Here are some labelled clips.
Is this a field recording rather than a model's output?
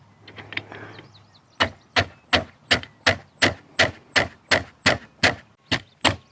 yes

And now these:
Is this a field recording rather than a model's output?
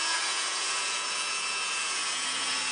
no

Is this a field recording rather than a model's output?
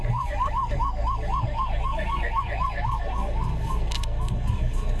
no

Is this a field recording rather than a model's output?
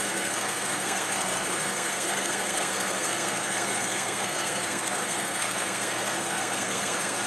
no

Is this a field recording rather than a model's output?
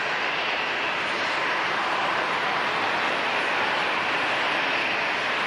yes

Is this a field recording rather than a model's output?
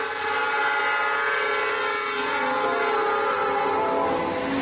yes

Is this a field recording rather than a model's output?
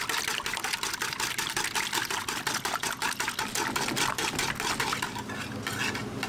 yes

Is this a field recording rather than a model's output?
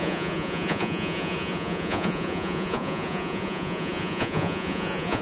no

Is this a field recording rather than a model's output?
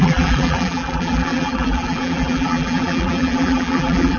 no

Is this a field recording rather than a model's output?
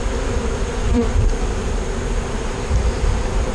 no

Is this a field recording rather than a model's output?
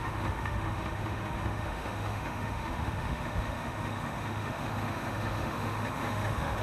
no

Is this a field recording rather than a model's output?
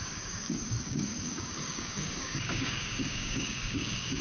no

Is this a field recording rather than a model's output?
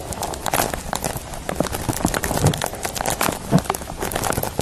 yes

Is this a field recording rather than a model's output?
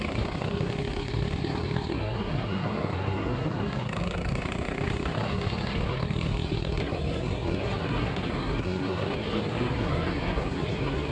no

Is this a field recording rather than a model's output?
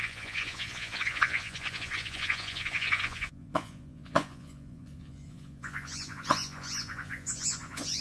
no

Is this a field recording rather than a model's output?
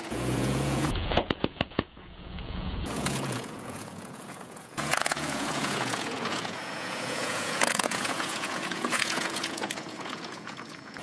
no